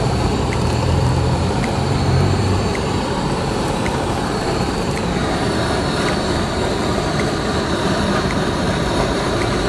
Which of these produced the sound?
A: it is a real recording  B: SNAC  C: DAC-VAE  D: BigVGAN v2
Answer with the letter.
D